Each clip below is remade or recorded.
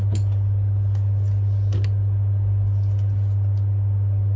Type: recorded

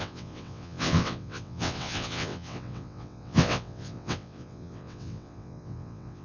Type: remade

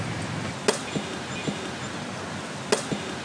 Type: recorded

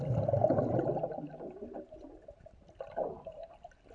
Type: recorded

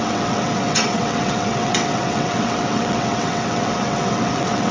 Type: remade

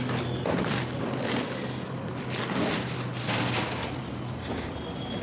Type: recorded